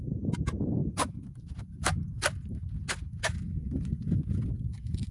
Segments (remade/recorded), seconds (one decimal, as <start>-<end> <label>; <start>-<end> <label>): 0.0-5.1 recorded